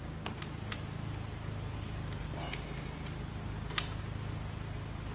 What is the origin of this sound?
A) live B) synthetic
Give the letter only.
A